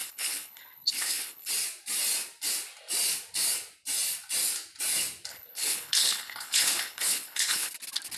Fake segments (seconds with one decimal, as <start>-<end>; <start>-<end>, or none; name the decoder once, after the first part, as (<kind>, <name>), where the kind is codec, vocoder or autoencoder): 0.0-1.5 (codec, HILCodec); 5.3-7.7